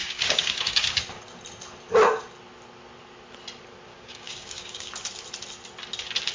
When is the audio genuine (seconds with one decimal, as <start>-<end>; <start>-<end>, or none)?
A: 1.0-3.9; 4.9-6.3